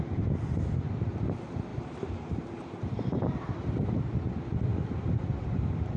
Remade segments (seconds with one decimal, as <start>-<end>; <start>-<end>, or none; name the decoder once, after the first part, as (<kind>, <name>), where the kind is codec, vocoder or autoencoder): 1.7-4.0 (vocoder, BigVGAN v2); 4.7-6.0